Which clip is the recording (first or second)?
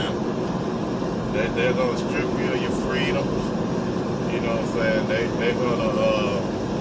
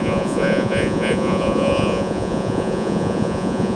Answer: first